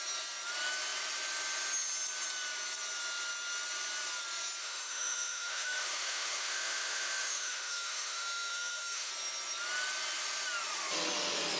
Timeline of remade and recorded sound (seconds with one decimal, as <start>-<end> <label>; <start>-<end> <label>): 0.0-4.6 recorded; 4.6-9.1 remade; 9.1-11.6 recorded